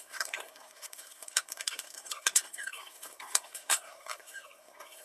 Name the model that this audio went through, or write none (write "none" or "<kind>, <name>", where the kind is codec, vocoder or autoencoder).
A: codec, SNAC